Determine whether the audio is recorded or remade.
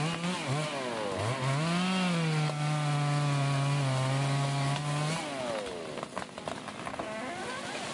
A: recorded